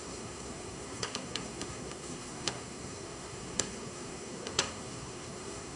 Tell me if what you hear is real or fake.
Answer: fake